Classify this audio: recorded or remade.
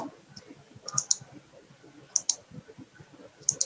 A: recorded